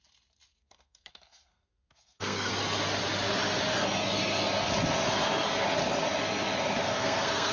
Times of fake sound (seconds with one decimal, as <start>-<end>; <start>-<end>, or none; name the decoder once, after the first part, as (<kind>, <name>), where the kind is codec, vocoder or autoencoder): 0.5-2.5 (codec, SNAC); 6.8-7.5